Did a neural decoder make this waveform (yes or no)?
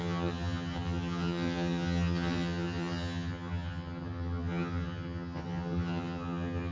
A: yes